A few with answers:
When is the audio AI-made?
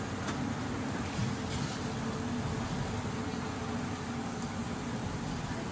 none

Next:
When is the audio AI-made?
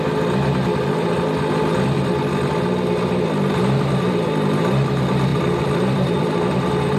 5.3-6.6 (vocoder, BigVGAN v2)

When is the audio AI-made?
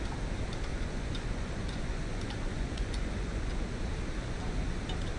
0.7-3.8 (vocoder, Vocos); 4.2-4.8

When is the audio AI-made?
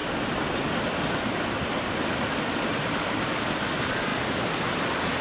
none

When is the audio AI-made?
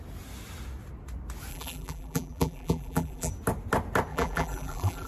1.5-3.3 (vocoder, BigVGAN v2); 4.1-5.1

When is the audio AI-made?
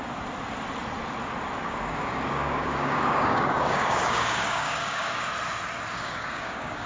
1.6-5.3 (codec, DAC); 5.9-6.9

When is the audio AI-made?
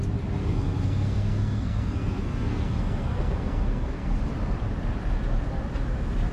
0.4-4.2 (codec, SNAC)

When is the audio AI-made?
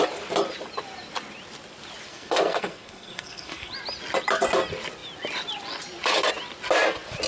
2.1-3.7 (codec, SNAC)